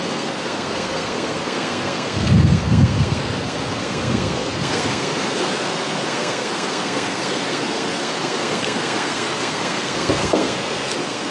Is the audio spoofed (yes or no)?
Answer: yes